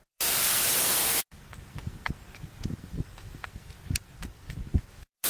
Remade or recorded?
remade